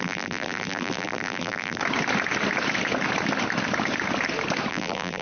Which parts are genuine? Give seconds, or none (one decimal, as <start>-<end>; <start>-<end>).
1.8-4.7